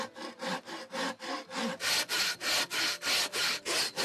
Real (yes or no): yes